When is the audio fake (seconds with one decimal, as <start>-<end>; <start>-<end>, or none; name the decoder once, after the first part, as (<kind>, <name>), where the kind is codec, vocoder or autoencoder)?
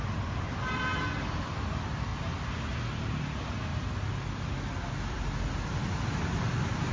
none